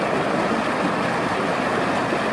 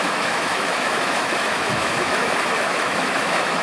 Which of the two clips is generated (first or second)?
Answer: second